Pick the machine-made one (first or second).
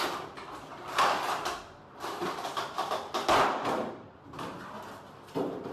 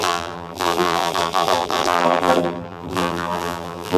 second